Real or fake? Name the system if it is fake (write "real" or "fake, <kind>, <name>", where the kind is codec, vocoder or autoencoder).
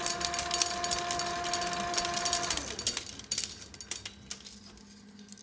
real